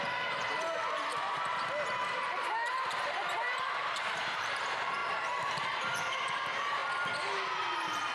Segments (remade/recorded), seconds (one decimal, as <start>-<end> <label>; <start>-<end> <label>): 0.0-1.1 recorded; 1.1-4.6 remade; 4.6-8.1 recorded